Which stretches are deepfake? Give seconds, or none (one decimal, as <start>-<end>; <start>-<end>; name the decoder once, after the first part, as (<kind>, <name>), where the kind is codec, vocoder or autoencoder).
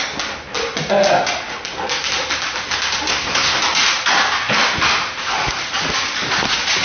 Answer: 3.1-3.6 (codec, SNAC)